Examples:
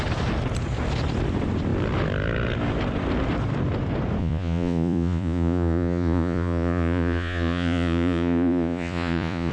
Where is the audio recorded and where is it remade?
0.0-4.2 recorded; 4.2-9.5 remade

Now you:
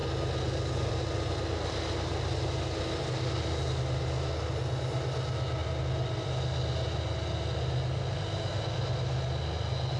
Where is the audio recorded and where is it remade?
0.0-10.0 recorded

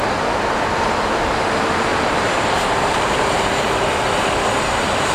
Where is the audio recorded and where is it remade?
0.0-1.9 recorded; 1.9-4.3 remade; 4.3-5.1 recorded

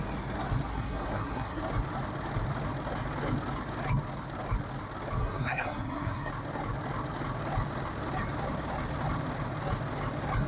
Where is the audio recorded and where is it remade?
0.0-0.7 recorded; 0.7-1.6 remade; 1.6-5.2 recorded; 5.2-6.3 remade; 6.3-10.5 recorded